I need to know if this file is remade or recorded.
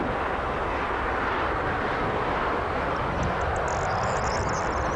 recorded